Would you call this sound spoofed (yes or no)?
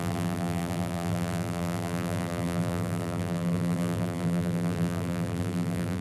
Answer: yes